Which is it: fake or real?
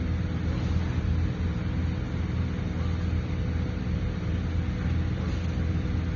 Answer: real